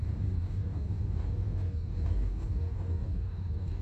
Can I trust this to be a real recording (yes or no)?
no